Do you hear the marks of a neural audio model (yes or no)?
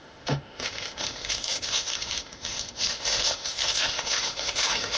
yes